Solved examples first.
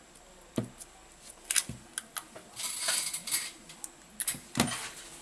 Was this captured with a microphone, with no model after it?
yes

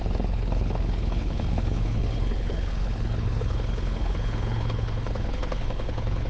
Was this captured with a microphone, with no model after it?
no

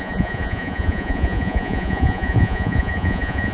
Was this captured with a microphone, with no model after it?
no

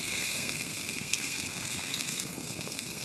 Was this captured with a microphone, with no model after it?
no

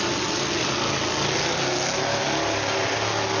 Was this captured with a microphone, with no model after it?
yes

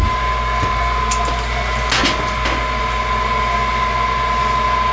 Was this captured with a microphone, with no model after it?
yes